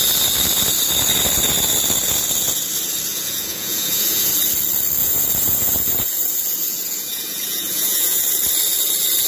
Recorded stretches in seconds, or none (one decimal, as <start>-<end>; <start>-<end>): 0.0-3.1; 4.3-5.0; 8.2-9.3